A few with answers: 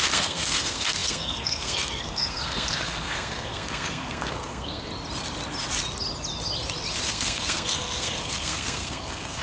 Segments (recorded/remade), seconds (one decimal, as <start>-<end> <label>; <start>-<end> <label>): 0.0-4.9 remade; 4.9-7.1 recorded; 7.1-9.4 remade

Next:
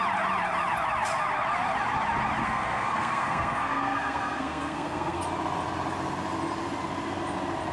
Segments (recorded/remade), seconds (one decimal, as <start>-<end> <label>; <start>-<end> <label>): 0.0-2.4 recorded; 2.4-5.2 remade; 5.2-7.7 recorded

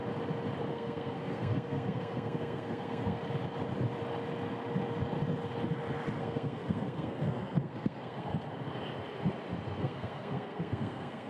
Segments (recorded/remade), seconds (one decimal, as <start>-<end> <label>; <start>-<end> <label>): 0.0-0.7 recorded; 0.7-3.2 remade; 3.2-6.2 recorded; 6.2-8.3 remade; 8.3-9.8 recorded; 9.8-11.3 remade

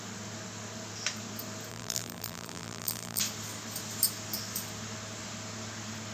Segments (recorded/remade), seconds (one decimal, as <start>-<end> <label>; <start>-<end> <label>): 0.0-1.7 recorded; 1.7-3.2 remade; 3.2-6.1 recorded

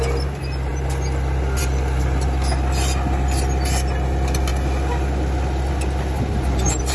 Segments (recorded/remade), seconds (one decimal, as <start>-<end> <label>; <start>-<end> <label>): 0.0-6.9 recorded